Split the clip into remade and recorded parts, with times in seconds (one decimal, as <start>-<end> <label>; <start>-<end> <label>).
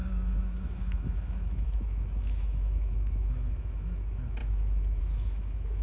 0.0-5.8 remade